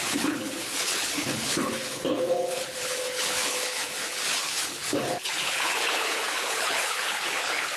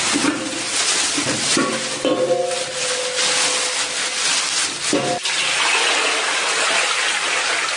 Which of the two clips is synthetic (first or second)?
first